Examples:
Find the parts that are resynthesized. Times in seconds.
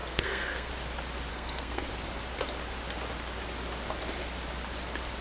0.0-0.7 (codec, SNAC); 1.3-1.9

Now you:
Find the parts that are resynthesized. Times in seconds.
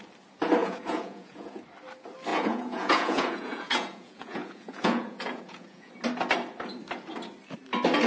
0.6-1.6 (vocoder, Vocos); 2.3-5.9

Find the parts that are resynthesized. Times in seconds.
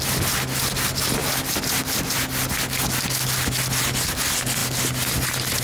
none